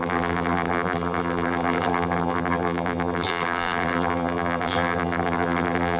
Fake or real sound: fake